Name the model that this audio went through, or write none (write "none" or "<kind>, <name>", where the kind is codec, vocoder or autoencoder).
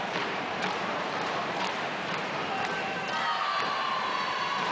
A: vocoder, BigVGAN v2